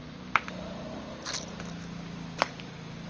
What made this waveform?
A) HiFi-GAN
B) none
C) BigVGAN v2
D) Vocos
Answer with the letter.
B